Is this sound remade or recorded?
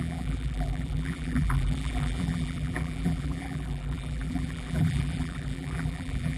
remade